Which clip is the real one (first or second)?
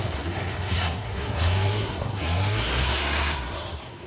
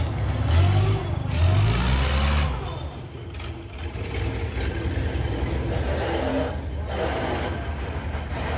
second